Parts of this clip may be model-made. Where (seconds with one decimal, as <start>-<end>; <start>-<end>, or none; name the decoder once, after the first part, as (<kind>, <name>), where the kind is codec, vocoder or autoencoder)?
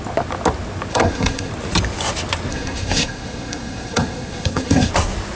0.9-1.5 (codec, SNAC); 2.5-4.9